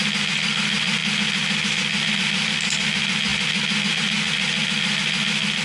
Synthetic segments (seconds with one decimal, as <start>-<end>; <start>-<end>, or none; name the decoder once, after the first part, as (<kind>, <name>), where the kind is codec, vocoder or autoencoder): none